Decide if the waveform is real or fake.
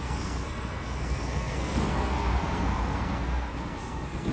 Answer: fake